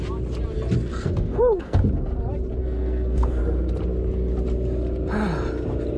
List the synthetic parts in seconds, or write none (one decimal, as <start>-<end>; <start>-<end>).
0.9-1.8; 2.6-3.4